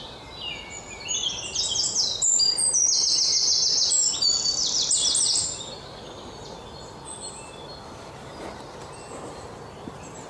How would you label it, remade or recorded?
recorded